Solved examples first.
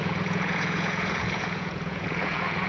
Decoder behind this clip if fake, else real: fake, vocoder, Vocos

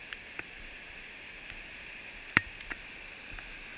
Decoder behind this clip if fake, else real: real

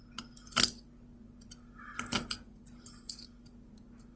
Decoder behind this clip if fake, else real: real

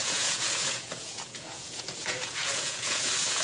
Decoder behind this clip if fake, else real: fake, vocoder, Vocos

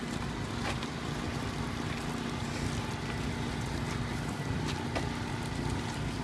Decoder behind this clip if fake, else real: real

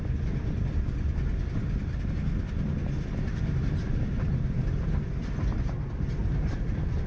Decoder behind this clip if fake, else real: real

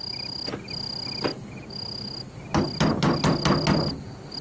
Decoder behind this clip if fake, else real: real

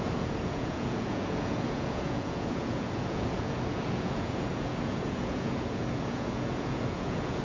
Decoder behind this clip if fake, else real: fake, vocoder, Vocos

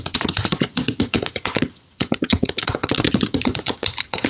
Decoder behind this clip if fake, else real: fake, vocoder, Vocos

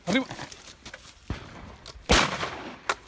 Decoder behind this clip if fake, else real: real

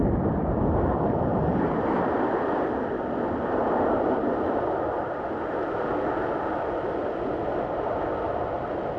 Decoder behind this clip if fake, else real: real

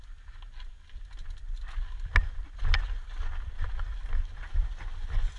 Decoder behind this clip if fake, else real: real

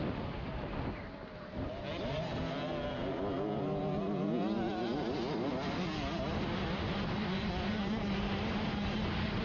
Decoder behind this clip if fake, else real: real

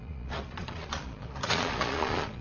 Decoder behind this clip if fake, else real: fake, vocoder, Vocos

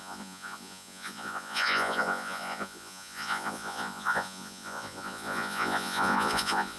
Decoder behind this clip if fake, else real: fake, vocoder, Vocos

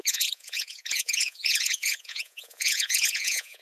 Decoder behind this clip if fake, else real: fake, vocoder, Vocos